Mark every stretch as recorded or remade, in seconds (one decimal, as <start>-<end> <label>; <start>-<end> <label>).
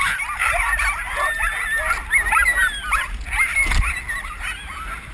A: 0.0-5.1 recorded